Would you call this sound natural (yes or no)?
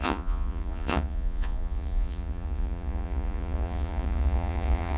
no